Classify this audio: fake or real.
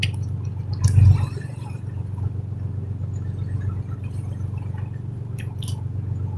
real